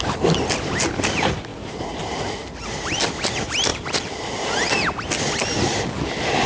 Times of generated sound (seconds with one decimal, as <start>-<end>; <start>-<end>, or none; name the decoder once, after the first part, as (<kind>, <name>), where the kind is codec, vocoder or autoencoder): 1.5-2.3 (vocoder, BigVGAN v2); 3.7-4.5